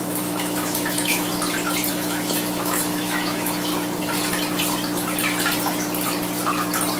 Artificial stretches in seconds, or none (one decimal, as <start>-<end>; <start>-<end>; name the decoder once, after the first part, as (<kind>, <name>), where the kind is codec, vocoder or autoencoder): 0.0-1.3 (autoencoder, DAC-VAE); 1.9-3.7